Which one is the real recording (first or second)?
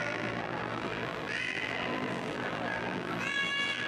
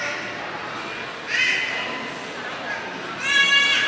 second